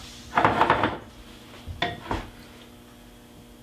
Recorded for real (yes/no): yes